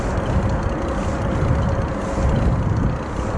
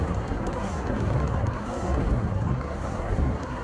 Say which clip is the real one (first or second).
first